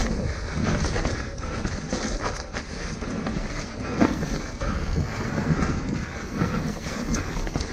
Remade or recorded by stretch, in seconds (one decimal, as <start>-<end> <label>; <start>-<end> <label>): 0.0-7.7 remade